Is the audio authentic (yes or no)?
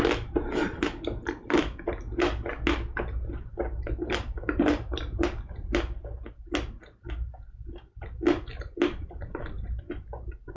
yes